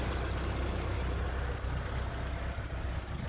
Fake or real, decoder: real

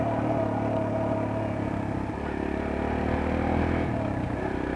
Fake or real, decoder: real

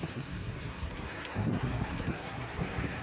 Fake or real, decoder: fake, codec, SNAC